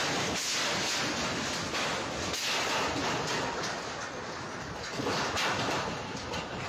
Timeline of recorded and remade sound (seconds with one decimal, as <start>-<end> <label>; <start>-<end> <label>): 0.0-6.7 recorded